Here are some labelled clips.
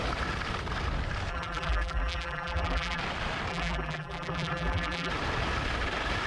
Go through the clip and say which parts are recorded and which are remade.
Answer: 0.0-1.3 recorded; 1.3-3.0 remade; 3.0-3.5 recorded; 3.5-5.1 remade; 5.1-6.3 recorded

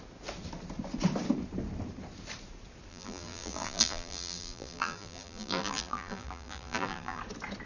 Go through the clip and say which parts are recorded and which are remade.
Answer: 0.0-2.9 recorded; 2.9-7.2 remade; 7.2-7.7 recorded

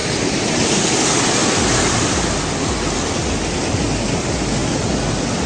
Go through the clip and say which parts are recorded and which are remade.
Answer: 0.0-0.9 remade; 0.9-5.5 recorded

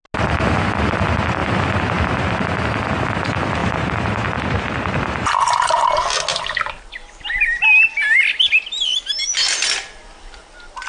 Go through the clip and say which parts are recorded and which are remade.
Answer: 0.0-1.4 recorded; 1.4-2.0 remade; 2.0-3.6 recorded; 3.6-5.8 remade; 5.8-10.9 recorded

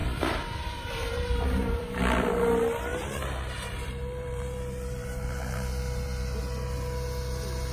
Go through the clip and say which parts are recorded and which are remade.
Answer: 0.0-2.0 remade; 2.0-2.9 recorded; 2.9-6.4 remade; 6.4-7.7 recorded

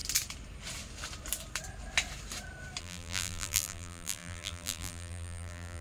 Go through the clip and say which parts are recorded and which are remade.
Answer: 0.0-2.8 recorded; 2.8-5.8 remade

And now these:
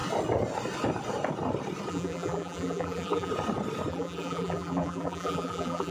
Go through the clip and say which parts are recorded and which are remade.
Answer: 0.0-1.9 recorded; 1.9-3.3 remade; 3.3-3.9 recorded; 3.9-5.9 remade

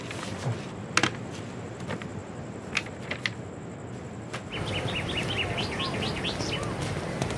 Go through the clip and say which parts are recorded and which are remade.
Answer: 0.0-7.4 recorded